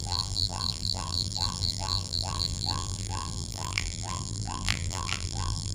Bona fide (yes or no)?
no